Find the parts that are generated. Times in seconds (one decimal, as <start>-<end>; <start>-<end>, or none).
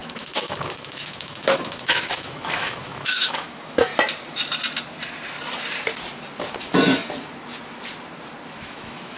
0.0-3.9; 8.6-9.2